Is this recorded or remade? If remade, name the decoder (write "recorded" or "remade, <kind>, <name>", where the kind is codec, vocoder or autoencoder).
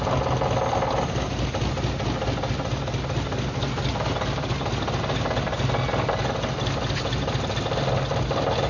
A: recorded